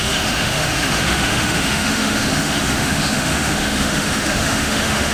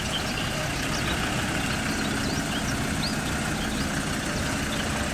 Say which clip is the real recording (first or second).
second